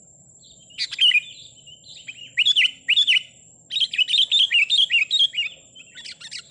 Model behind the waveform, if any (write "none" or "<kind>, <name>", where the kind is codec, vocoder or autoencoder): none